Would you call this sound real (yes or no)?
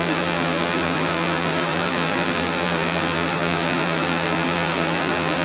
no